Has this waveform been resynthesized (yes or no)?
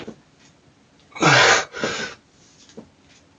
no